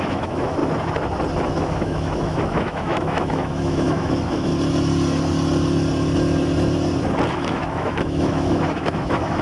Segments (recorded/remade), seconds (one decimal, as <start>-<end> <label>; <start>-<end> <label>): 0.0-0.6 remade; 0.6-1.5 recorded; 1.5-4.5 remade; 4.5-7.3 recorded; 7.3-9.4 remade